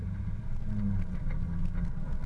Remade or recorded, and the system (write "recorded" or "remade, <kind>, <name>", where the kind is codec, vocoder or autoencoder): recorded